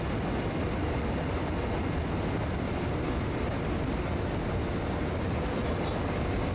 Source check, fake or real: real